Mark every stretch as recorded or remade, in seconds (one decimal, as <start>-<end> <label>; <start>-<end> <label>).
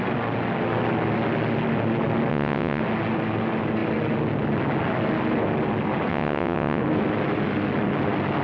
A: 0.0-2.3 recorded; 2.3-2.8 remade; 2.8-6.1 recorded; 6.1-6.8 remade; 6.8-8.4 recorded